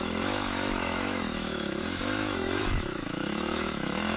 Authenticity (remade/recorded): remade